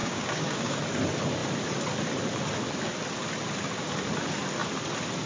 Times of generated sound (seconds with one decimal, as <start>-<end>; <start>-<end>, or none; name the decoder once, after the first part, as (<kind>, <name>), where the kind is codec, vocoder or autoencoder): 0.0-0.8 (codec, DAC)